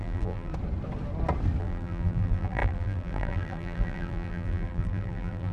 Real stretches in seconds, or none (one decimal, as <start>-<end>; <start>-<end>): 0.5-1.6

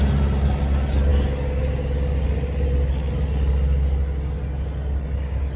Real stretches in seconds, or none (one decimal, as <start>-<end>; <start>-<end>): 0.0-5.6

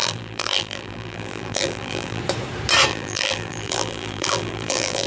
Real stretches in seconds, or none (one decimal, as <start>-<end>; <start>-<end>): 2.2-2.9

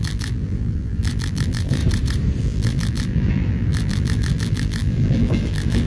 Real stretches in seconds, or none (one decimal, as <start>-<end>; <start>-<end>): 1.8-2.4